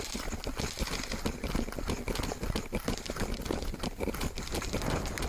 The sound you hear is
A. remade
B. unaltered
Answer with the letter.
B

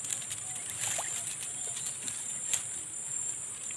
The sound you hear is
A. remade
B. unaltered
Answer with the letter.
B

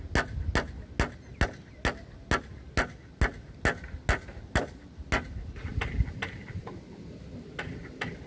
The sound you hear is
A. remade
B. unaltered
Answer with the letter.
B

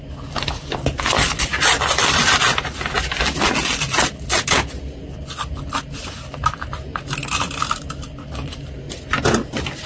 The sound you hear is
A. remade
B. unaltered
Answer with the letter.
B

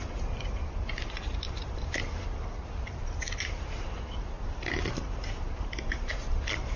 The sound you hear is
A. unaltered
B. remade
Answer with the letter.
B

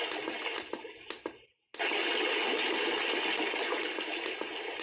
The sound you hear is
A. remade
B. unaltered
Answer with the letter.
B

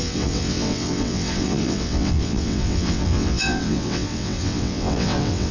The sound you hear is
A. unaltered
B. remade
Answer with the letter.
B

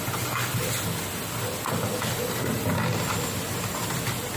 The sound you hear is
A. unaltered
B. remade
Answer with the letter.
A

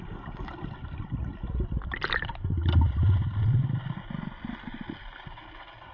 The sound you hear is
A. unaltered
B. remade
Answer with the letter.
A